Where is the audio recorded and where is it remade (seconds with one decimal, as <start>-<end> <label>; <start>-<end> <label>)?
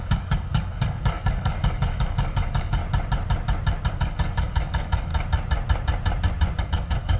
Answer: 0.0-2.8 remade; 2.8-3.9 recorded; 3.9-5.1 remade; 5.1-6.6 recorded; 6.6-7.2 remade